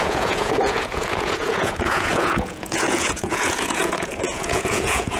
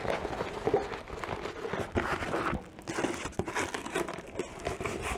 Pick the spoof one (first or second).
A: first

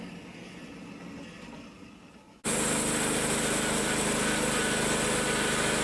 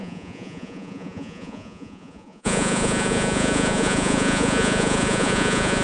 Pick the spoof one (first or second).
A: second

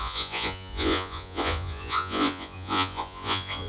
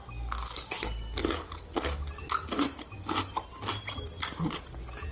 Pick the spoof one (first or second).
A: first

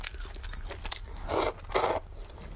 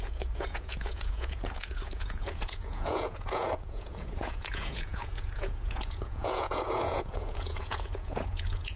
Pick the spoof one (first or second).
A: second